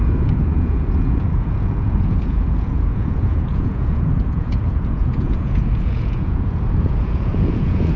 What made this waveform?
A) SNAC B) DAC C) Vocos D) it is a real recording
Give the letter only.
C